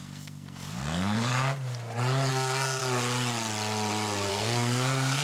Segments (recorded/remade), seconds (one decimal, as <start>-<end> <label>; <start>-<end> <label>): 0.0-1.3 remade; 1.3-2.3 recorded; 2.3-2.8 remade; 2.8-4.3 recorded; 4.3-5.2 remade